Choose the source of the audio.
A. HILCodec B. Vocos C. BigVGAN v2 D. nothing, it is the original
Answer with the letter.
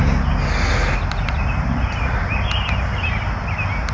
D